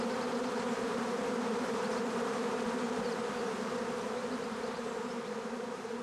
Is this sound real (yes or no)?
no